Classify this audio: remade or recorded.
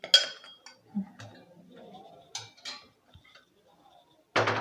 recorded